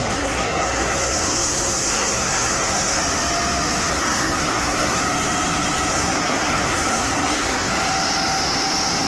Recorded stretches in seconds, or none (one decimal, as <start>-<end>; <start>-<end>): 3.0-3.9; 5.0-5.9; 7.7-9.1

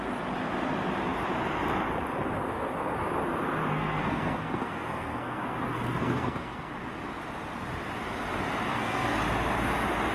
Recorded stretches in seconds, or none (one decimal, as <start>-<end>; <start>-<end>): 0.0-3.7; 6.7-8.7; 9.2-10.1

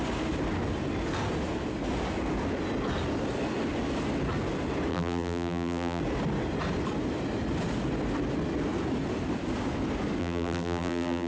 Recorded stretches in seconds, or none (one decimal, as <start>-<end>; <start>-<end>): 0.0-4.9; 6.0-10.2

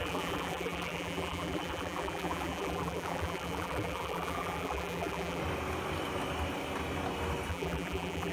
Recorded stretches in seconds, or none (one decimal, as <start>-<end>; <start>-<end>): 5.4-7.5

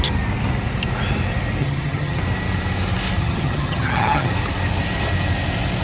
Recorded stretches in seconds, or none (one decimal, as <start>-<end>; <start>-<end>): 0.0-1.6; 2.2-3.2; 4.3-5.8

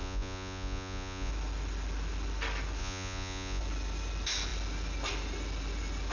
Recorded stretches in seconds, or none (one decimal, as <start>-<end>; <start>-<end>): 1.3-2.8; 3.6-6.1